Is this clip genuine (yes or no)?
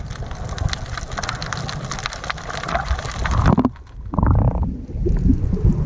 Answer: yes